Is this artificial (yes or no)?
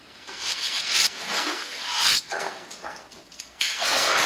yes